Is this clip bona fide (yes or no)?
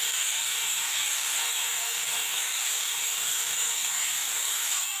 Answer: no